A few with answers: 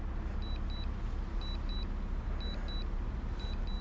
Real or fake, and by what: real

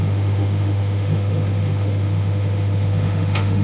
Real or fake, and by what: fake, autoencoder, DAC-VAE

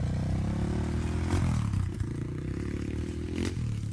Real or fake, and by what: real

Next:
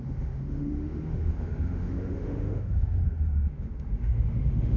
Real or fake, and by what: fake, autoencoder, DAC-VAE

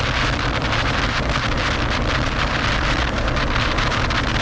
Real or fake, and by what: real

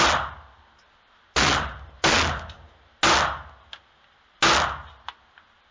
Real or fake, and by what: real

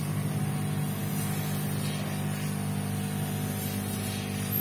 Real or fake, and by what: real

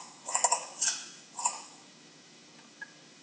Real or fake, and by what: fake, autoencoder, DAC-VAE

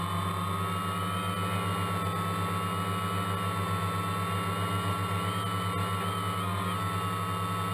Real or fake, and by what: real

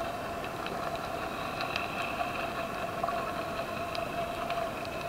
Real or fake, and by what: real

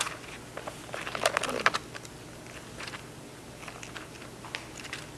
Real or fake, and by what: real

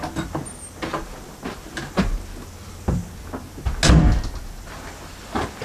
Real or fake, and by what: real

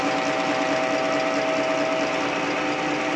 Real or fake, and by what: real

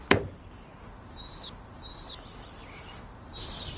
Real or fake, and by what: real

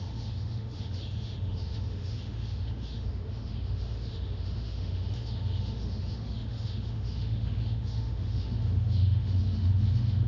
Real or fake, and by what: fake, autoencoder, DAC-VAE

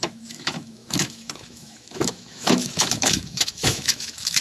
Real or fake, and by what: fake, autoencoder, DAC-VAE